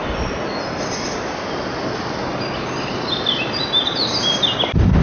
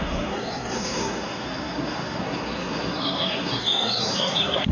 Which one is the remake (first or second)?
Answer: second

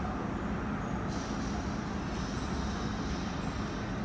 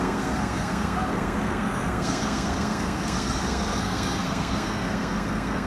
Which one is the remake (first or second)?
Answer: second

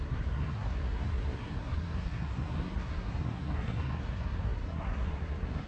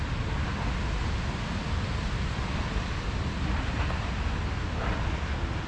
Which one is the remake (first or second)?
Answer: first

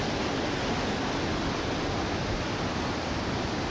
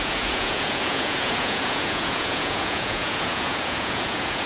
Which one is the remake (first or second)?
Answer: second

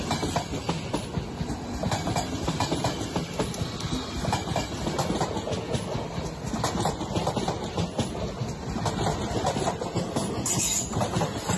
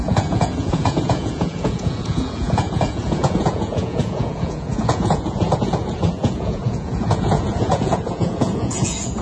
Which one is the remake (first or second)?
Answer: second